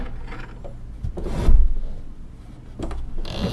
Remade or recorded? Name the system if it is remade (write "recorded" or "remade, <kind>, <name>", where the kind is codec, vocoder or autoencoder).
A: recorded